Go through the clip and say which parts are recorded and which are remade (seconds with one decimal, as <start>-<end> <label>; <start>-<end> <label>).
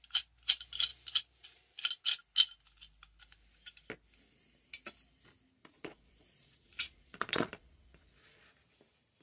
0.0-5.6 recorded; 5.6-8.4 remade; 8.4-9.2 recorded